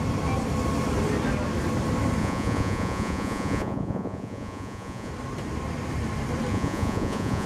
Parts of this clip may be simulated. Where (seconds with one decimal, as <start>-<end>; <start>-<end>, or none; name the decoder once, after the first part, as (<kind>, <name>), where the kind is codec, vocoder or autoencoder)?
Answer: 2.2-5.1 (vocoder, Vocos); 6.5-7.5